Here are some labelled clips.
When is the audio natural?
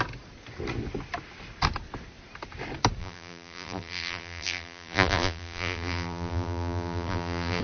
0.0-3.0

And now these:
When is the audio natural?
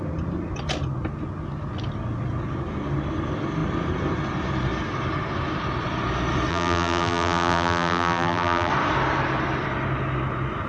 0.0-6.5; 8.7-10.7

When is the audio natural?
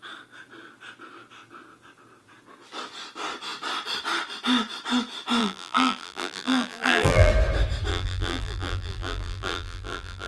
0.0-5.4; 7.3-7.9